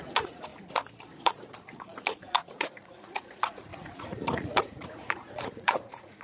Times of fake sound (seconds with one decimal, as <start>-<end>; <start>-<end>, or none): 0.0-0.5; 1.1-6.2